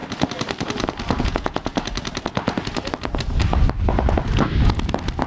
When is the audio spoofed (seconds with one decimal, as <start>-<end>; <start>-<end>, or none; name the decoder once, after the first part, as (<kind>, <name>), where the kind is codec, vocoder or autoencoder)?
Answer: 1.2-1.7 (vocoder, Vocos)